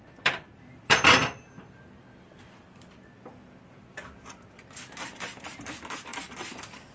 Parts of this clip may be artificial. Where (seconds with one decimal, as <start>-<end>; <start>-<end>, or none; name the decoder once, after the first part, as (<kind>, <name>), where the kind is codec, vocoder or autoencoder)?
0.0-1.2 (vocoder, BigVGAN v2); 5.1-6.9